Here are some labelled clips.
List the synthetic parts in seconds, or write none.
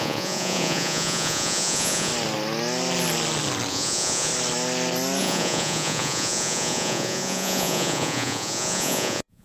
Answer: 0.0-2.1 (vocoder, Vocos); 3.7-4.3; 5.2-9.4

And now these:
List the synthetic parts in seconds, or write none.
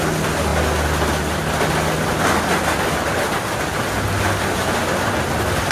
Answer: none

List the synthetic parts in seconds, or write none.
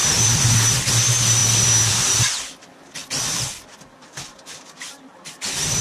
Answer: 0.0-0.9 (vocoder, BigVGAN v2); 3.0-3.5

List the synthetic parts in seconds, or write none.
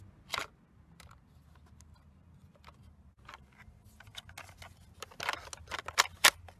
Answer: none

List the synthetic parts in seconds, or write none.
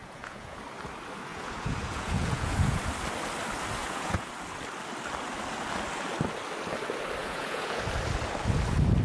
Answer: 0.0-0.6 (vocoder, Vocos); 1.3-2.8; 3.8-4.3; 7.2-7.8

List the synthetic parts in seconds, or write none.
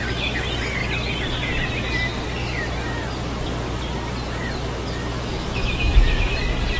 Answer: 5.1-6.3 (autoencoder, DAC-VAE)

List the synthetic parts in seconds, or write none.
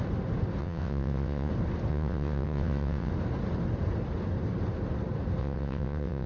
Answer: 0.6-1.5 (vocoder, WaveNeXt); 1.9-3.1; 5.4-6.3